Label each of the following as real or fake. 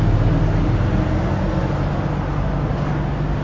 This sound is real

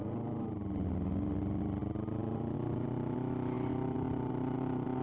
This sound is real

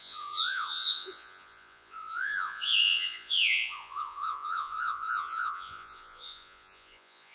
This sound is fake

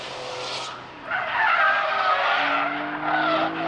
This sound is real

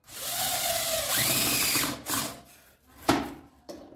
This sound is fake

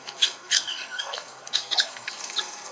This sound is fake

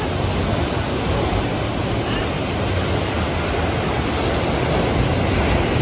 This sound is real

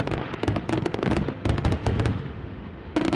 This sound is fake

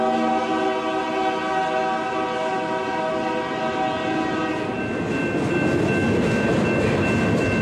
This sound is real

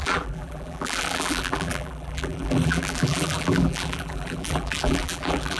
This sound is fake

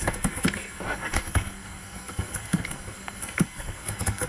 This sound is fake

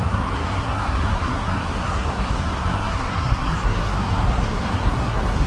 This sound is fake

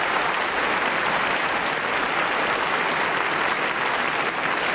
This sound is real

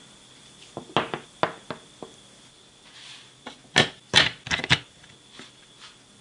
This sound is real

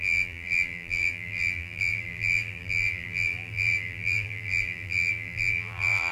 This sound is fake